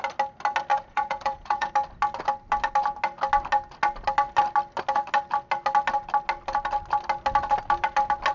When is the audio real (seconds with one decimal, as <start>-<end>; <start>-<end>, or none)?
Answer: 0.0-0.7; 1.7-8.3